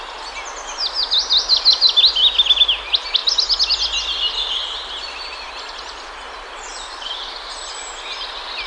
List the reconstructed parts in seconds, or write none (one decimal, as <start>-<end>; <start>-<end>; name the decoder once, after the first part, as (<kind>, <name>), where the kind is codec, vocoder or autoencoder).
6.7-7.7 (vocoder, BigVGAN v2)